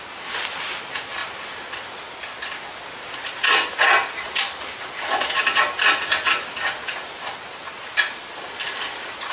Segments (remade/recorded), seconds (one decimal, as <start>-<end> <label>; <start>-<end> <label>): 0.0-9.3 recorded